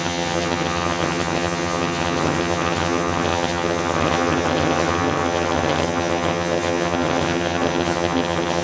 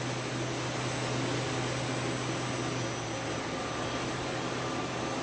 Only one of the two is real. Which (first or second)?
second